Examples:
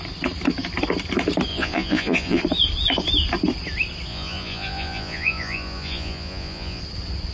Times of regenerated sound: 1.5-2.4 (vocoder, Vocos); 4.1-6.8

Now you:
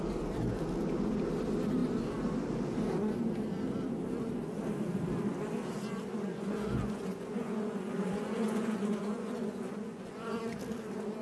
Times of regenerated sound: 6.3-10.4 (vocoder, Vocos)

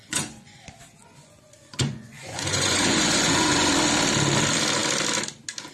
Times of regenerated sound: 0.0-0.6 (vocoder, Vocos); 1.0-3.7

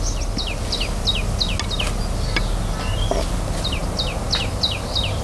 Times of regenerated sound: none

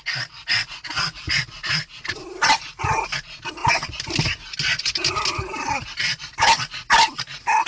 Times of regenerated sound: none

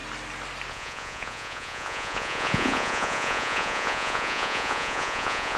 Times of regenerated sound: 0.7-5.6 (vocoder, Vocos)

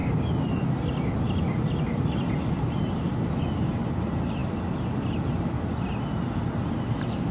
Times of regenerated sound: none